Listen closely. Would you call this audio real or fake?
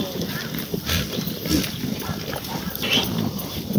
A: fake